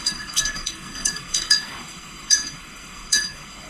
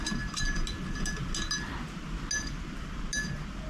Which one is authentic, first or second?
second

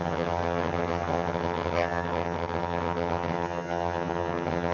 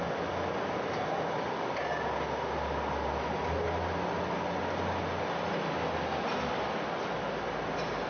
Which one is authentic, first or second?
second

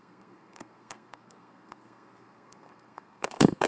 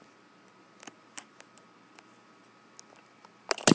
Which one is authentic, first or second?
second